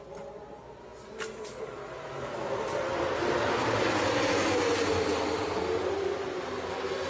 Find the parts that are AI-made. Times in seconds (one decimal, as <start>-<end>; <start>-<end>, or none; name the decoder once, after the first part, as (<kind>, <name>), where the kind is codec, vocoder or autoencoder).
none